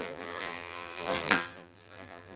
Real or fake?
fake